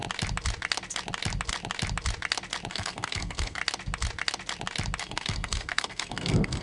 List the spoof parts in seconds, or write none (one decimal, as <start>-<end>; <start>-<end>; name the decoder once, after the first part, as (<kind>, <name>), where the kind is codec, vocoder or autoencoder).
2.7-3.6 (codec, SNAC); 5.0-6.6